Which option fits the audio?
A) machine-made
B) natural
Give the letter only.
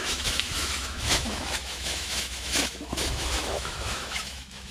A